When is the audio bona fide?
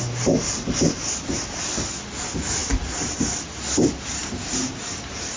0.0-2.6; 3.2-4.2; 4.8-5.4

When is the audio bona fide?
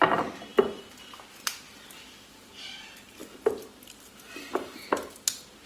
0.0-5.7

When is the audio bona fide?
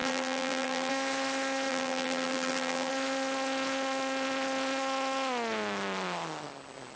0.9-1.7; 2.9-7.0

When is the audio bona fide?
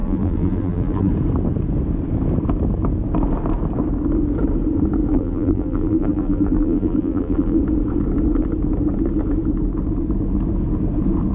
1.1-5.1; 7.6-11.3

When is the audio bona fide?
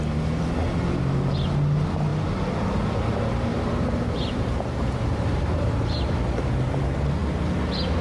0.0-3.5; 6.5-8.0